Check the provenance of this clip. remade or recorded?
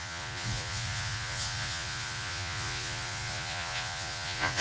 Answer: remade